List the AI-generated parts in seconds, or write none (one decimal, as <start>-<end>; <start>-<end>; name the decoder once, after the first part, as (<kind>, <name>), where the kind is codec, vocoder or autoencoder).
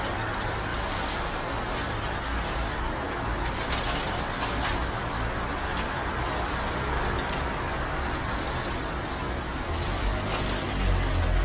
none